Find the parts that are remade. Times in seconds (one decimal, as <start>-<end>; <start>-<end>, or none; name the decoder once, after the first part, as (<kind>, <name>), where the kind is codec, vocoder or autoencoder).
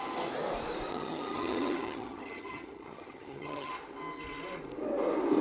0.9-3.7 (vocoder, HiFi-GAN)